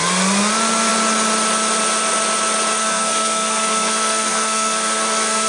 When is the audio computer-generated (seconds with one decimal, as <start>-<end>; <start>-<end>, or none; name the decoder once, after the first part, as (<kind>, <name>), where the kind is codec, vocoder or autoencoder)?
2.8-5.5 (codec, SNAC)